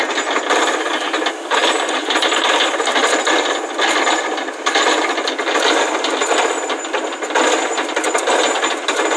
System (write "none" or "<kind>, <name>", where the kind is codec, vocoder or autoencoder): none